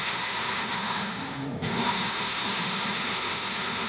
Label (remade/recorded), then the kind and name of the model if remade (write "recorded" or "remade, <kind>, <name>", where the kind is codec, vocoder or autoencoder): remade, autoencoder, DAC-VAE